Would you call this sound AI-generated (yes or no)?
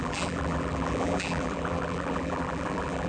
yes